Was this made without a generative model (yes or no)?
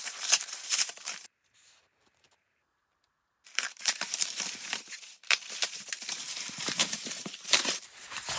no